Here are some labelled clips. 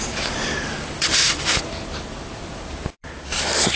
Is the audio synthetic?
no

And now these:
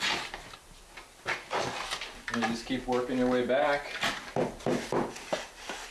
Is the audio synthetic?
no